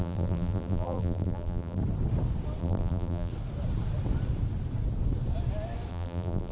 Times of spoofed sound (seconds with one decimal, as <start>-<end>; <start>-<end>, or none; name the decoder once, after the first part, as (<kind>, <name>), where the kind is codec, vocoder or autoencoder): 0.0-1.8 (vocoder, BigVGAN v2); 2.6-3.3; 5.9-6.5